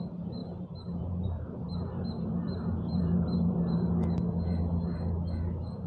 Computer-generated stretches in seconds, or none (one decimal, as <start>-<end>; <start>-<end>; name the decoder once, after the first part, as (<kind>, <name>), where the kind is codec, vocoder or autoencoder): 0.4-3.9 (vocoder, BigVGAN v2)